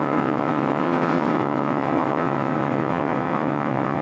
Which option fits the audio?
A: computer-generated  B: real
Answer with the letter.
A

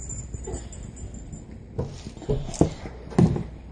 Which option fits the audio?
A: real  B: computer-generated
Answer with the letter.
A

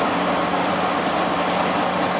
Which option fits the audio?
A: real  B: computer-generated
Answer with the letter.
A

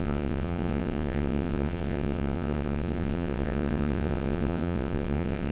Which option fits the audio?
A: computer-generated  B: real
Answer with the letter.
A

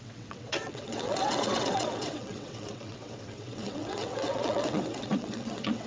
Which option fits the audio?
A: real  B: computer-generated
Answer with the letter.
B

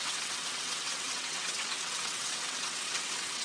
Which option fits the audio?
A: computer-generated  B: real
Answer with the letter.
A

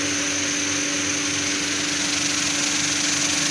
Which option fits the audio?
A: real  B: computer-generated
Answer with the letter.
A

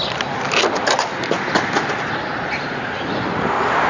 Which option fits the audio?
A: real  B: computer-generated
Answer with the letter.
A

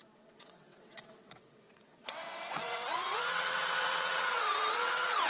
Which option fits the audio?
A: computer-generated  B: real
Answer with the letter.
A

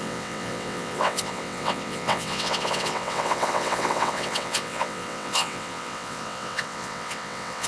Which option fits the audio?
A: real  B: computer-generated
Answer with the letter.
B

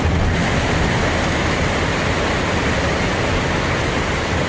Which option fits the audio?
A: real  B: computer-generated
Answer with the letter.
A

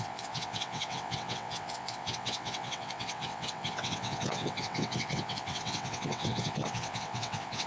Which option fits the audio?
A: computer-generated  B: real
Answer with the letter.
A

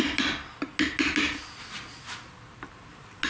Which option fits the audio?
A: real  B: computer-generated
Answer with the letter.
A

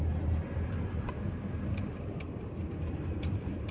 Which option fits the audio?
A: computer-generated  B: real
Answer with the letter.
B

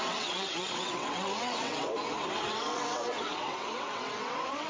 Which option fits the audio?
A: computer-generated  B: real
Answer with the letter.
A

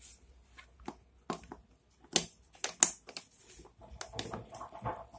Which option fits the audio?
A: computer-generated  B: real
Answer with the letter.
B